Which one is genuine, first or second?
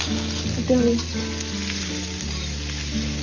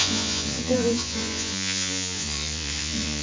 first